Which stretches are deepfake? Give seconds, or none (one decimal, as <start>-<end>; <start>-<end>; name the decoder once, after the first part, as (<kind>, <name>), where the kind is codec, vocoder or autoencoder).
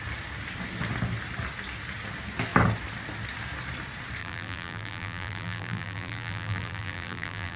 4.2-7.6 (vocoder, BigVGAN v2)